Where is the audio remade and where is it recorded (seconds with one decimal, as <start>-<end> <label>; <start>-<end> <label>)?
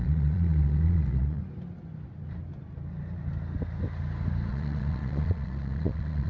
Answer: 0.0-1.4 remade; 1.4-4.5 recorded; 4.5-6.3 remade